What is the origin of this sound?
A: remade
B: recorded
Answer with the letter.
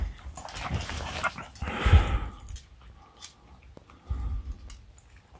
B